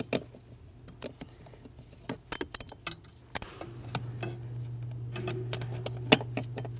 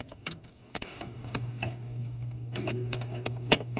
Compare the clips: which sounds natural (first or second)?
first